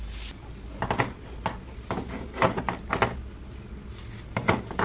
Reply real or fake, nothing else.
real